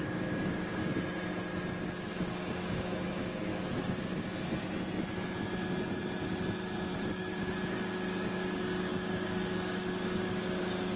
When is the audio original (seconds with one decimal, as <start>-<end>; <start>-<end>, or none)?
0.8-2.1; 3.5-6.9